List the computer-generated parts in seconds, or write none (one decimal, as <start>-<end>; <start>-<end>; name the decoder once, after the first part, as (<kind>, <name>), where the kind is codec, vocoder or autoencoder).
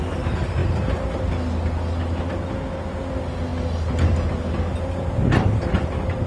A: none